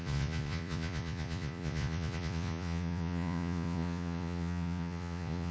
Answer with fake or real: fake